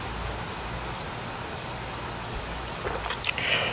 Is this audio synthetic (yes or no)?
no